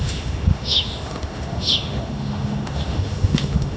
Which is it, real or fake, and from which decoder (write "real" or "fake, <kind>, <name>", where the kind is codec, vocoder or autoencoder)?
fake, autoencoder, DAC-VAE